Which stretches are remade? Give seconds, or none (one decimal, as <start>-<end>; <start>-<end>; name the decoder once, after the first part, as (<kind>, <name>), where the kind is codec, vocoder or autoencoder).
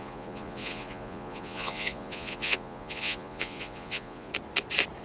0.0-4.3 (vocoder, Vocos)